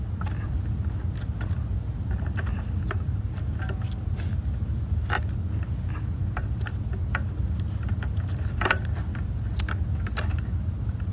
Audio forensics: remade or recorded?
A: recorded